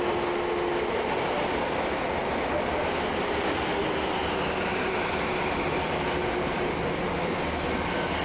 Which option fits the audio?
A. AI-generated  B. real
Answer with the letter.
B